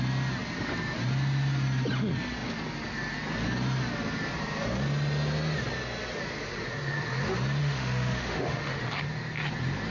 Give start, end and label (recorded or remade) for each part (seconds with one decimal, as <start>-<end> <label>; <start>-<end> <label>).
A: 0.0-7.6 recorded; 7.6-8.8 remade; 8.8-9.9 recorded